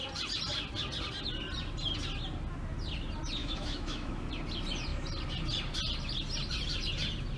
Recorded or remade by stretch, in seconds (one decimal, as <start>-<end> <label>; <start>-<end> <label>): 0.0-3.4 recorded; 3.4-4.3 remade; 4.3-7.4 recorded